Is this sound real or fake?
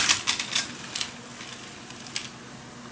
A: real